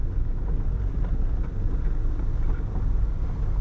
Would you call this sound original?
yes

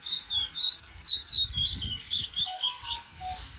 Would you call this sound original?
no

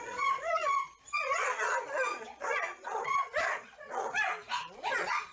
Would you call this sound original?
no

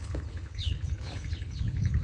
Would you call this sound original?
no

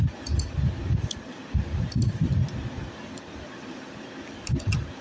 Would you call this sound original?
yes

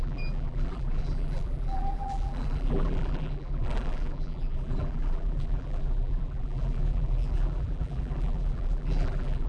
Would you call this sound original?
no